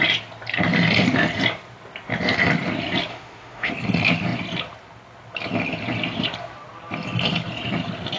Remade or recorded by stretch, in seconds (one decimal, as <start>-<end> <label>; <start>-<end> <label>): 0.0-3.1 recorded; 3.1-3.7 remade; 3.7-8.2 recorded